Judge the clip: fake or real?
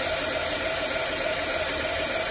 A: fake